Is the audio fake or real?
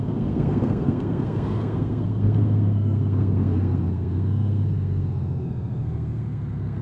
fake